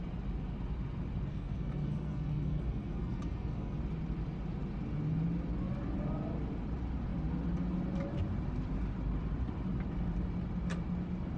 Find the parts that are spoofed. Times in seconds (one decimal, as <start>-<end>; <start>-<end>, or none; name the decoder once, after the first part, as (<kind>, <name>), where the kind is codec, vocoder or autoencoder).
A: 1.3-3.8 (codec, SNAC)

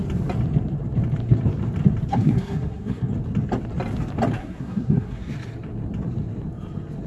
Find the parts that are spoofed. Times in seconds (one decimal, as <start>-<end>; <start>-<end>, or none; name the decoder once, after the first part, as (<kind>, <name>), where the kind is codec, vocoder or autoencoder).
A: 2.1-3.1 (codec, SNAC); 4.4-5.3

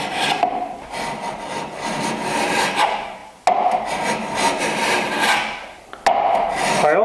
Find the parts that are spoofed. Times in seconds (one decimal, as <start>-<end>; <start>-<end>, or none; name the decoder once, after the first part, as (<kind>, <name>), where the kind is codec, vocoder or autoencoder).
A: none

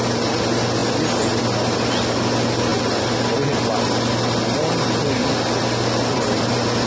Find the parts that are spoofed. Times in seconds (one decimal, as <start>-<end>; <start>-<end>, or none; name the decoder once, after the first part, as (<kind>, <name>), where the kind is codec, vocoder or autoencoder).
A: none

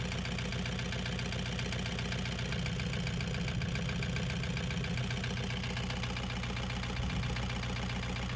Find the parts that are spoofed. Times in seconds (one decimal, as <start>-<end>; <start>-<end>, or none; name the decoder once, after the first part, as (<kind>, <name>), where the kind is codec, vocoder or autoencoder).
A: none

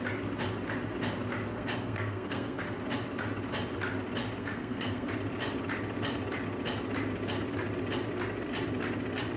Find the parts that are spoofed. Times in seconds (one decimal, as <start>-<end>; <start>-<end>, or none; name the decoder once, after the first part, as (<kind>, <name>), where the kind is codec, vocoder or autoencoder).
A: 1.5-2.6 (codec, SNAC); 4.4-5.1

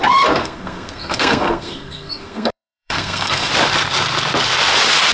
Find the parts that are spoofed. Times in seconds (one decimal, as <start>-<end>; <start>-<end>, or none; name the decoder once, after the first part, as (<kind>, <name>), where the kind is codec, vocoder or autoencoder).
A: 0.4-3.5 (codec, SNAC)

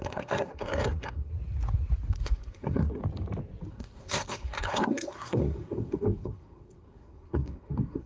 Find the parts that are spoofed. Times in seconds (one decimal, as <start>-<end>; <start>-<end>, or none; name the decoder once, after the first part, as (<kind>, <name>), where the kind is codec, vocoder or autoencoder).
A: 0.0-1.3 (codec, SNAC); 2.1-3.0; 3.7-8.1